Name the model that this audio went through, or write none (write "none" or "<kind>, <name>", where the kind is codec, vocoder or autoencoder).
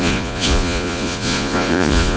vocoder, Vocos